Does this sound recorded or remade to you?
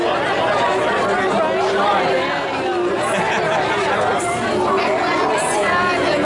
recorded